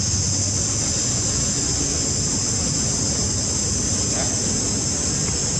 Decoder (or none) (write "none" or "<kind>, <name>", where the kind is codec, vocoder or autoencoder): none